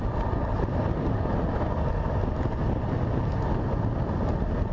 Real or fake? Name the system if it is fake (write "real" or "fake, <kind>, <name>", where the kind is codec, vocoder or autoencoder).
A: real